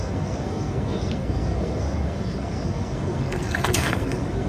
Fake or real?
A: fake